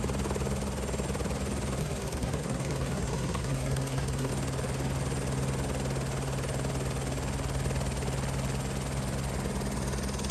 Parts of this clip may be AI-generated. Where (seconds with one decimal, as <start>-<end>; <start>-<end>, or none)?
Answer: 1.8-4.3